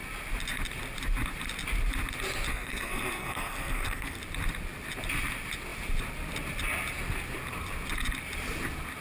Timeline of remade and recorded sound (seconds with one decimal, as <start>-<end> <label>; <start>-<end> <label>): 0.0-2.5 recorded; 2.5-4.2 remade; 4.2-9.0 recorded